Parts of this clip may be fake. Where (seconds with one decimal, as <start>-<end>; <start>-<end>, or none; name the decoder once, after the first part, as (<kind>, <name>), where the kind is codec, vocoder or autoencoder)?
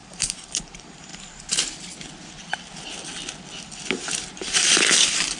0.0-1.1 (vocoder, BigVGAN v2); 4.3-5.4